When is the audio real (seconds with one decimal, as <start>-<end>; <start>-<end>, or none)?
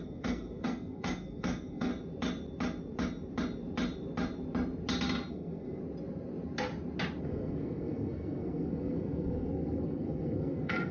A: 1.9-5.3; 5.8-7.2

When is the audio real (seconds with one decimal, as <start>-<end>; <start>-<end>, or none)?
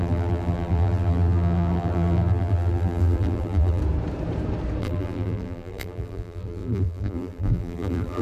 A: 3.8-4.8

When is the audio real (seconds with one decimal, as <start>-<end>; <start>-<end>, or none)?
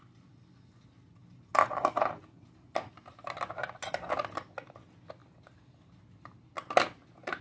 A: 0.0-7.4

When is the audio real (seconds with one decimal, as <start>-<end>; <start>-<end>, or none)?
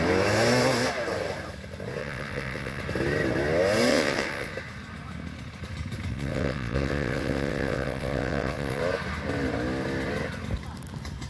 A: 0.0-2.0; 2.8-3.9; 4.5-6.1; 8.8-11.3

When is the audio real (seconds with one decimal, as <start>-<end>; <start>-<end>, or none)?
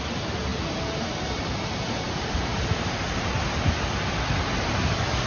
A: 0.0-5.3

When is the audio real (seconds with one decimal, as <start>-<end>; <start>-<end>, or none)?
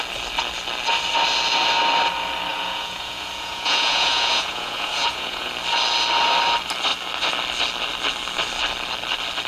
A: 0.0-2.5; 5.5-9.5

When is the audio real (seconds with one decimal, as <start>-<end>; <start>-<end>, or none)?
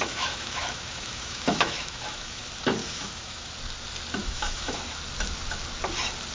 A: 2.4-2.8; 3.5-4.2; 4.8-6.3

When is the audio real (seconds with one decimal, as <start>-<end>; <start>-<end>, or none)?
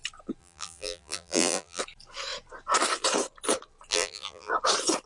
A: 0.0-0.4; 1.8-3.9; 4.5-5.1